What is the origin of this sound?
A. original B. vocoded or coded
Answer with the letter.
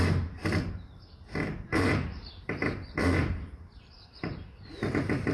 B